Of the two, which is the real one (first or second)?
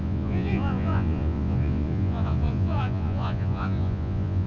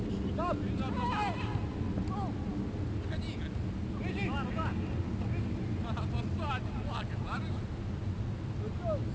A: second